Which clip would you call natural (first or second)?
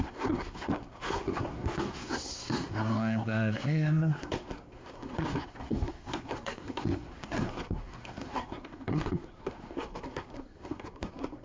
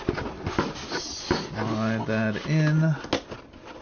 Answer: second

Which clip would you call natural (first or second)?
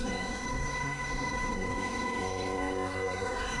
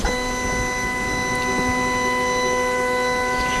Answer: second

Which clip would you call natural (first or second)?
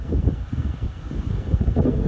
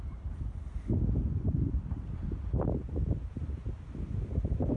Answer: second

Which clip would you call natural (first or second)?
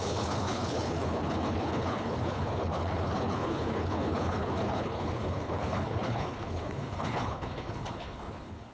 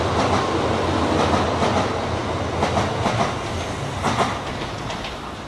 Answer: second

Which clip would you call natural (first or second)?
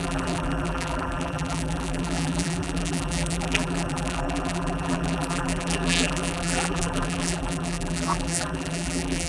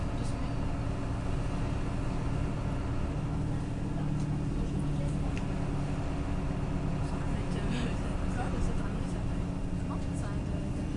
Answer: second